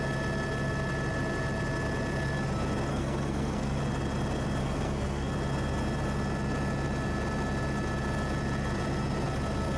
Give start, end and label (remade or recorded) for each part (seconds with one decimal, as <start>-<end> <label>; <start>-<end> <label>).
0.0-2.9 recorded; 2.9-3.8 remade; 3.8-4.6 recorded; 4.6-5.3 remade; 5.3-9.8 recorded